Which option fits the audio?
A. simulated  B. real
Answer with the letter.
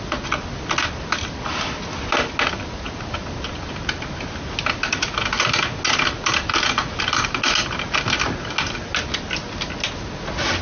B